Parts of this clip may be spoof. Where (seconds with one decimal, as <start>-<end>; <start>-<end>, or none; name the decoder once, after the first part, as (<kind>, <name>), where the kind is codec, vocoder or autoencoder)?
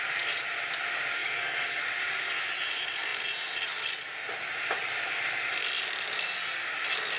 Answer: 1.2-1.8 (codec, SNAC)